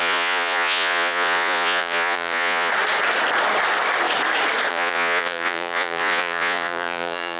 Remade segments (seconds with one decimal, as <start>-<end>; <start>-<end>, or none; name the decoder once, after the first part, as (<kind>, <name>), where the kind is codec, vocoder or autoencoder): 0.0-2.7 (vocoder, Vocos); 4.7-7.4